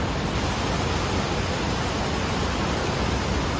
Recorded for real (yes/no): yes